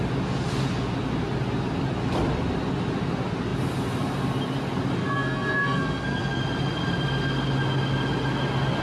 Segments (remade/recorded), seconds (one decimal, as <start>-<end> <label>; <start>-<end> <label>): 0.0-5.0 recorded; 5.0-6.4 remade; 6.4-8.8 recorded